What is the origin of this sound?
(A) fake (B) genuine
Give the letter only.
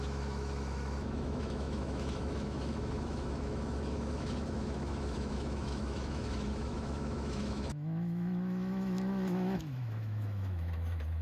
A